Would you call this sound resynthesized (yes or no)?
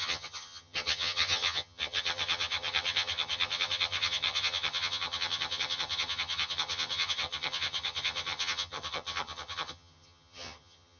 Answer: yes